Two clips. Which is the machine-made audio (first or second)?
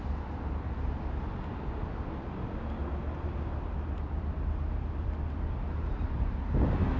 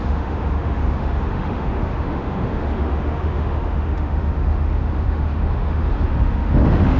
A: second